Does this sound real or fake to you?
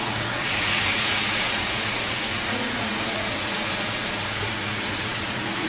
fake